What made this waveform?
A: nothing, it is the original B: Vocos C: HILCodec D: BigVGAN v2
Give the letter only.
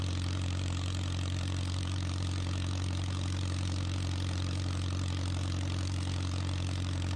D